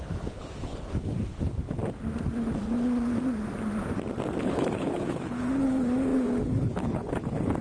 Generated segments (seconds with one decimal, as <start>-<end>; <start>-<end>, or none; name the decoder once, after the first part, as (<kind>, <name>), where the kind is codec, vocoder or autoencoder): 0.0-1.8 (codec, HILCodec); 4.4-7.6